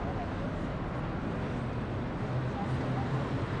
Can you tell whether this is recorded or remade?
recorded